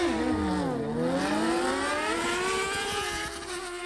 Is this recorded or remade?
recorded